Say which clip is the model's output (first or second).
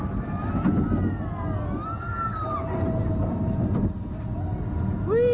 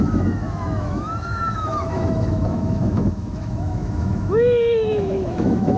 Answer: second